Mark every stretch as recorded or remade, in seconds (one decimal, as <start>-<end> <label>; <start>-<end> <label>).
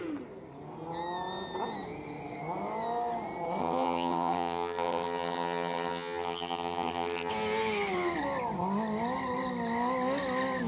0.0-3.6 recorded; 3.6-7.3 remade; 7.3-10.7 recorded